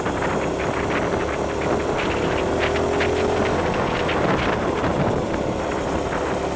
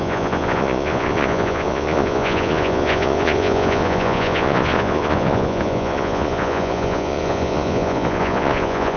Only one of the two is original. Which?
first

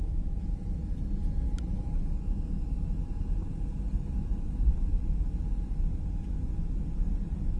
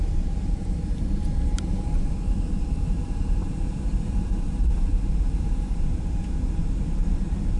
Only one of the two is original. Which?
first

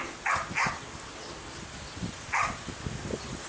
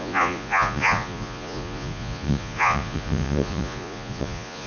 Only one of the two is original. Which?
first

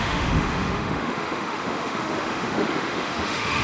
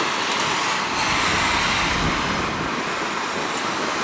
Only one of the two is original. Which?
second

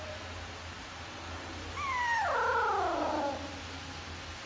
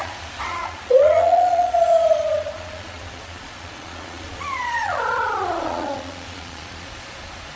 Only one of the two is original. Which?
first